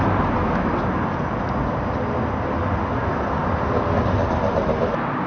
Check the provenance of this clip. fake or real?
real